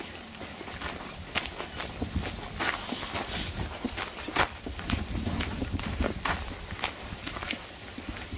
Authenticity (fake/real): real